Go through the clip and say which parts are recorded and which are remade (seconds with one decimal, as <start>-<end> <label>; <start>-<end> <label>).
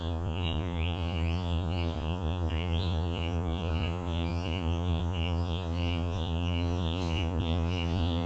0.0-8.3 remade